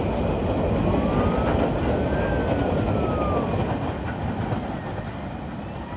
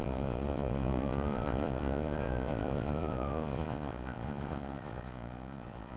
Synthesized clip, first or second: second